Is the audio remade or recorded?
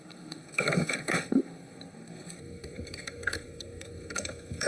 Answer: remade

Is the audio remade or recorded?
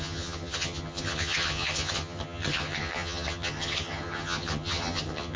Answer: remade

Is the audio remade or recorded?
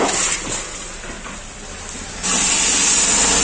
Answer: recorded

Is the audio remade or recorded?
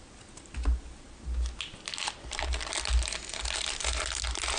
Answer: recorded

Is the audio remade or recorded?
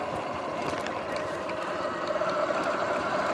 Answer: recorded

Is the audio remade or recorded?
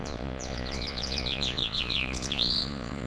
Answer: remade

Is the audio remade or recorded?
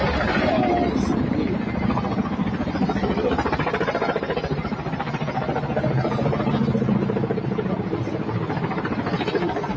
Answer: recorded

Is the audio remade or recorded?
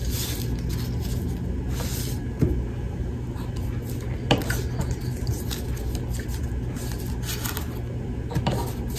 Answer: recorded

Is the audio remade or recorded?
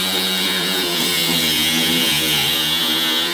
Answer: remade